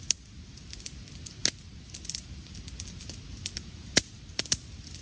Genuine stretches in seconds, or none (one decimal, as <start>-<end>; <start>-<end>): 0.0-5.0